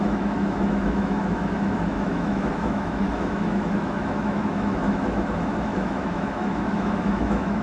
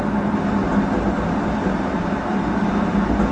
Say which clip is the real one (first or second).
second